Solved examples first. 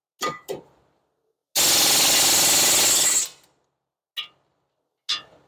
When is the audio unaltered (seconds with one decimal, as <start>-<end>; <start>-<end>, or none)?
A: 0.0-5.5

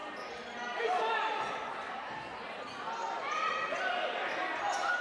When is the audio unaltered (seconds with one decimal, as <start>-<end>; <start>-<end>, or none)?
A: 0.0-5.0

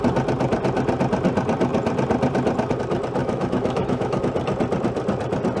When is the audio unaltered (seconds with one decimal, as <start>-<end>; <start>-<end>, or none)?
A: 0.0-3.2; 4.2-5.6

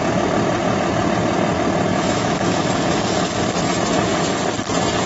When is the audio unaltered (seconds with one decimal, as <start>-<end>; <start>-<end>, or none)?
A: 0.0-1.9; 2.4-5.1